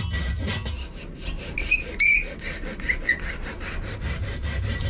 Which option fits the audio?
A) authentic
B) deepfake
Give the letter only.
A